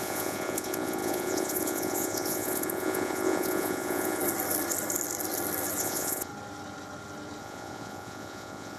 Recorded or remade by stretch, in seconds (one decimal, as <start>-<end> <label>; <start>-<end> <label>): 0.0-4.2 remade; 4.2-5.8 recorded; 5.8-6.3 remade; 6.3-7.4 recorded; 7.4-8.8 remade